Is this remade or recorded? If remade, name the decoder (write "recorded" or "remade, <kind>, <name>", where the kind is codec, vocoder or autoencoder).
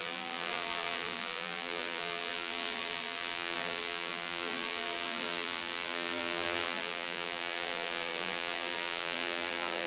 remade, vocoder, BigVGAN v2